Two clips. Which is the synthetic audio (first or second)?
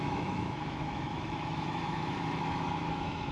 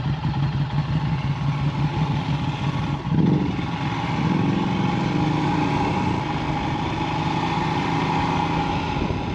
first